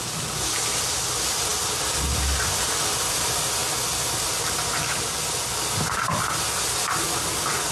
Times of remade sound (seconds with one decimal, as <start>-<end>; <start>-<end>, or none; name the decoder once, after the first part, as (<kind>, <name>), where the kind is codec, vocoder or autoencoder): none